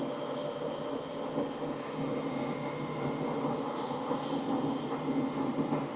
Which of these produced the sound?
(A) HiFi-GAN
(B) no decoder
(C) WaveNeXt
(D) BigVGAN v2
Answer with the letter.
B